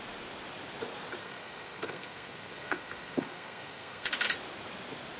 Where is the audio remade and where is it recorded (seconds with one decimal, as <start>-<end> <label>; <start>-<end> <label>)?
0.0-1.2 recorded; 1.2-4.1 remade; 4.1-5.2 recorded